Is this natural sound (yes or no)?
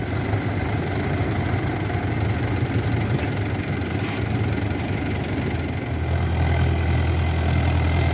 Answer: yes